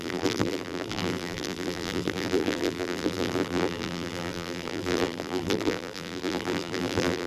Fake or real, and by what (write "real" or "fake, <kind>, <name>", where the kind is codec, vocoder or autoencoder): fake, vocoder, BigVGAN v2